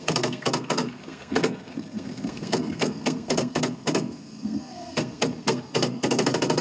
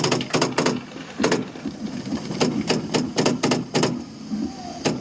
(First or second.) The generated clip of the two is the first